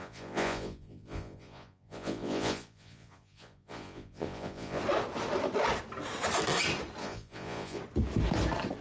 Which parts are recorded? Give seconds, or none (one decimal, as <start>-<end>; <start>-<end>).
4.8-7.0; 7.8-8.8